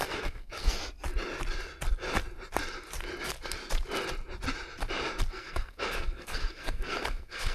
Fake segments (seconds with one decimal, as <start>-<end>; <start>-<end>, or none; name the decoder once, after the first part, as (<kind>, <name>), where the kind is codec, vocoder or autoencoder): 0.0-0.8 (codec, SNAC); 5.3-7.5